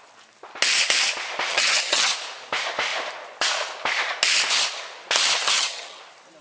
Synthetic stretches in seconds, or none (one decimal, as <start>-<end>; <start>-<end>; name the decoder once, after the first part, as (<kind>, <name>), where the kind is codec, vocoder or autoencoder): 1.5-2.1 (vocoder, HiFi-GAN); 5.4-6.0